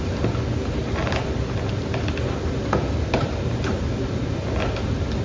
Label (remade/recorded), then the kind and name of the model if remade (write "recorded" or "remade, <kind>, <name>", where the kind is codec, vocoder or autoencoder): recorded